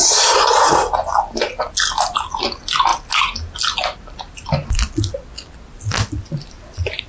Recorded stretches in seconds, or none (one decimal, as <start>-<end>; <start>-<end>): 0.8-7.1